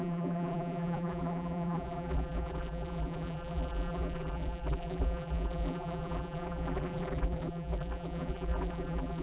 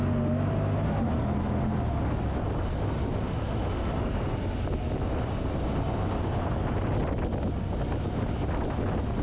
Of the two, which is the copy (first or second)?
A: first